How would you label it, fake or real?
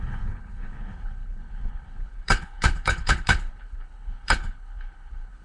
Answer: fake